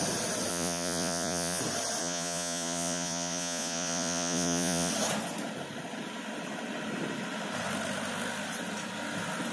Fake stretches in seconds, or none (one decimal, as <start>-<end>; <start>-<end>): 0.5-1.6; 2.0-4.9